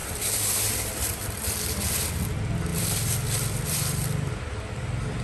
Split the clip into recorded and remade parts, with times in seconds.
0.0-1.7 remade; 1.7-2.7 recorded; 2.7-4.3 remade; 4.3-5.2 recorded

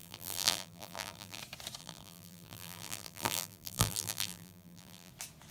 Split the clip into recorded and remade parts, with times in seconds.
0.0-1.4 remade; 1.4-1.8 recorded; 1.8-5.1 remade; 5.1-5.5 recorded